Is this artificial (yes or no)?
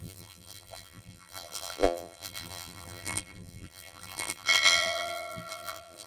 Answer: yes